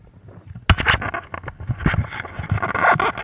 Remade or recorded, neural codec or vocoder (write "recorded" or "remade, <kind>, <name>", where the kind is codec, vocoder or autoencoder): recorded